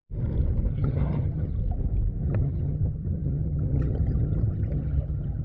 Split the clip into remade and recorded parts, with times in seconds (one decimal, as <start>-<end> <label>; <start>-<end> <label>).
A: 0.0-0.7 recorded; 0.7-1.5 remade; 1.5-2.2 recorded; 2.2-5.4 remade